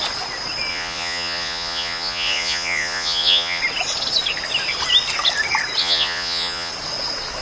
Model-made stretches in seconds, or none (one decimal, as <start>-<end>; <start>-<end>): 0.7-3.6; 5.8-6.7

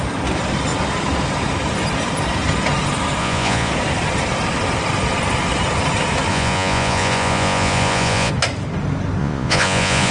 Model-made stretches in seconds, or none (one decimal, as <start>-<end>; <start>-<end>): 3.2-3.7; 6.3-8.3; 9.2-10.1

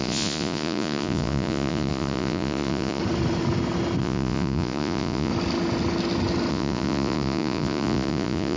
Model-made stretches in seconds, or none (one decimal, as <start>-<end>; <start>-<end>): 0.0-3.0; 4.0-5.3; 6.5-8.6

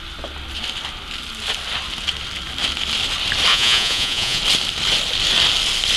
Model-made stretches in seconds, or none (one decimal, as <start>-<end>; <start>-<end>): 3.5-4.4

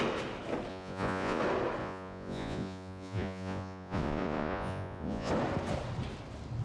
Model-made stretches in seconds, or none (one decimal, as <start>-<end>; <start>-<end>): 0.7-1.4; 1.8-5.3

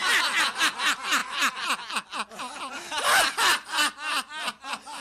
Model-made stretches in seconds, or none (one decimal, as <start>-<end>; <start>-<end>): none